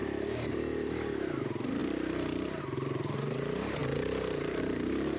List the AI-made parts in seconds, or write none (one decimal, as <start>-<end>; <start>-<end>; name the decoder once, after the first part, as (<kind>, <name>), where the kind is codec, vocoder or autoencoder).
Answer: 0.0-5.2 (vocoder, BigVGAN v2)